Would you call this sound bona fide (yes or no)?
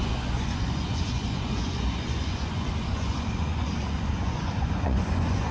no